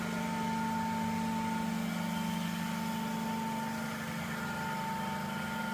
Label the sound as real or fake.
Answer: real